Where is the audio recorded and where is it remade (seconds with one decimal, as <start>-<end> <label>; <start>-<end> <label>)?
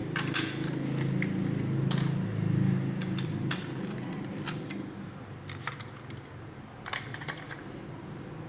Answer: 0.0-8.5 recorded